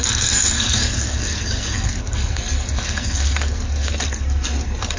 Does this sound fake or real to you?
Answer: fake